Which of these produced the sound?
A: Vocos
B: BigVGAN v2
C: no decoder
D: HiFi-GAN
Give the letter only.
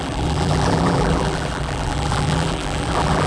B